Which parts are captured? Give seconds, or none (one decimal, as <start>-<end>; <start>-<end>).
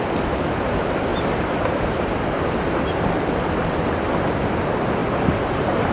1.1-4.6; 5.0-5.5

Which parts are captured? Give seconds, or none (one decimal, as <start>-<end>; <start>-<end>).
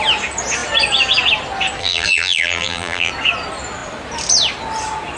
0.0-1.8; 3.1-5.2